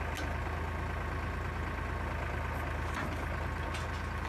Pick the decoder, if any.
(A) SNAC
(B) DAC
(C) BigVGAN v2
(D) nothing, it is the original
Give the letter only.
D